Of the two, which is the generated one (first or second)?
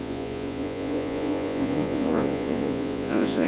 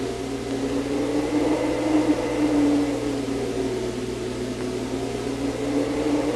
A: first